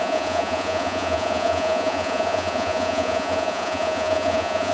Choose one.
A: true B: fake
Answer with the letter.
B